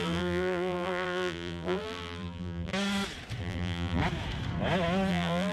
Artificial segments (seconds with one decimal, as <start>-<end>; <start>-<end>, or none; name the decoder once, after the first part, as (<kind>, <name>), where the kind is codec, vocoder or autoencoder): 0.0-2.7 (vocoder, BigVGAN v2); 3.4-4.0; 5.1-5.5